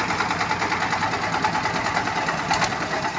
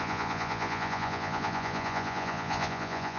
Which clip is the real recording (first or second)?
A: first